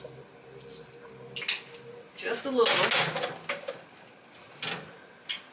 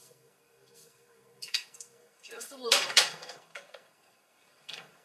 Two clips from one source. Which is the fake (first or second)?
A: second